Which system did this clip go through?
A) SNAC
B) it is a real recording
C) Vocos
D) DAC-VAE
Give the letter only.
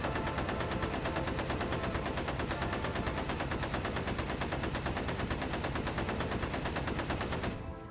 B